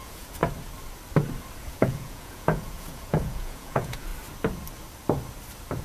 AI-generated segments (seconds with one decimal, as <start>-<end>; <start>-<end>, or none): 0.0-0.4; 1.6-4.1